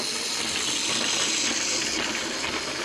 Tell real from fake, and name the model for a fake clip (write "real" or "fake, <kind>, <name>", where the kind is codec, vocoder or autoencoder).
real